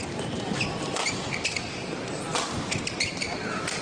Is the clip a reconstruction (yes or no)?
no